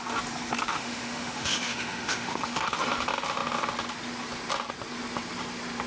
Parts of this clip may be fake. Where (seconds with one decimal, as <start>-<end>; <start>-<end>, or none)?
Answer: 0.7-2.8